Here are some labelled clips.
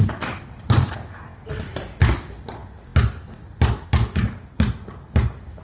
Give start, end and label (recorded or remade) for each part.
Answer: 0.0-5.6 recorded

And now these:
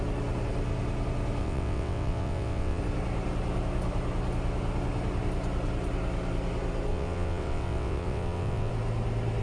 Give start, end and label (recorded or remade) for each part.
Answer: 0.0-1.4 recorded; 1.4-2.8 remade; 2.8-6.9 recorded; 6.9-8.7 remade; 8.7-9.4 recorded

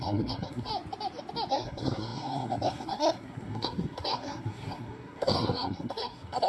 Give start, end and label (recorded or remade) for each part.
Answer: 0.0-0.7 remade; 0.7-1.5 recorded; 1.5-6.5 remade